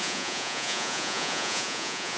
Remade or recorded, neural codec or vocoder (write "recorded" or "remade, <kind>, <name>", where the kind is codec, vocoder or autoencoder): remade, vocoder, Vocos